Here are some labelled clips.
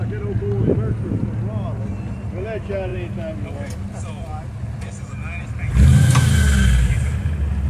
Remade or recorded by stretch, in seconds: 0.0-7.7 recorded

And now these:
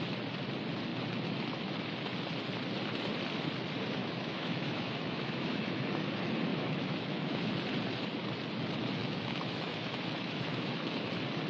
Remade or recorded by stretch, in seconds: 0.0-4.0 recorded; 4.0-6.1 remade; 6.1-6.5 recorded; 6.5-7.5 remade; 7.5-9.0 recorded; 9.0-11.1 remade; 11.1-11.5 recorded

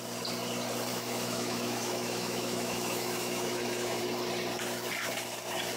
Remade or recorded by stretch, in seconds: 0.0-0.9 recorded; 0.9-4.0 remade; 4.0-5.8 recorded

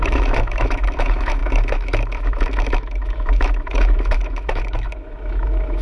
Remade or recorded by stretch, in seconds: 0.0-5.8 remade

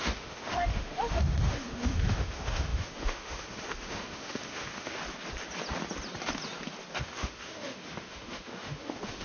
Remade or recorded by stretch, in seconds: 0.0-5.0 remade; 5.0-7.0 recorded; 7.0-9.2 remade